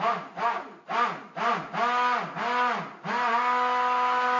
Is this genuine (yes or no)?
yes